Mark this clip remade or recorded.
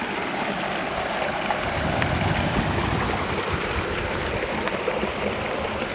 recorded